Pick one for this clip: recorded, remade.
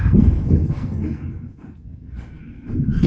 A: remade